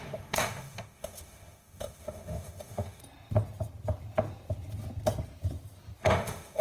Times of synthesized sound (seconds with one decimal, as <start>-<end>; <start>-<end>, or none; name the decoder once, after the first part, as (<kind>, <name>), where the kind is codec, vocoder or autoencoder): 0.0-3.0 (autoencoder, DAC-VAE); 6.0-6.6